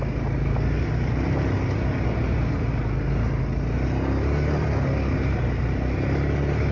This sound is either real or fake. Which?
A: real